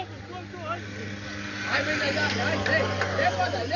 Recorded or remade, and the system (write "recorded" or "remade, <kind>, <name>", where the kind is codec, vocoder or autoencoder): recorded